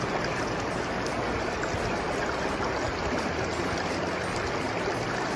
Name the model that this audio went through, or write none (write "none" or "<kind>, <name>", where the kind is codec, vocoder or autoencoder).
none